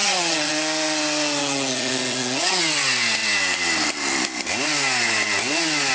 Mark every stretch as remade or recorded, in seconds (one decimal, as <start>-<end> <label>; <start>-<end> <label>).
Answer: 0.0-0.5 remade; 0.5-1.4 recorded; 1.4-2.6 remade; 2.6-5.9 recorded